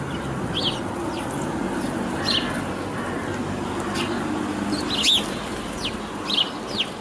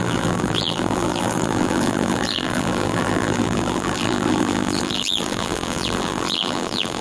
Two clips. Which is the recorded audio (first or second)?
first